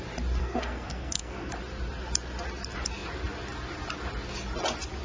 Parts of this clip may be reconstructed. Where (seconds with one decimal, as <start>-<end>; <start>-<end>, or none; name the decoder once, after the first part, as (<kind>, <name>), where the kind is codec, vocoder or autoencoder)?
0.4-1.5 (codec, SNAC)